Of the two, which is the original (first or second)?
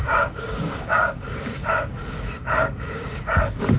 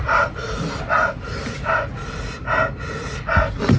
second